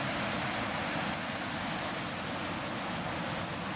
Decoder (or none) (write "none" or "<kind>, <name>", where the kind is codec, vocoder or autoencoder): none